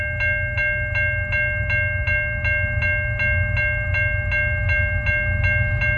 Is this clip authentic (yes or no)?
yes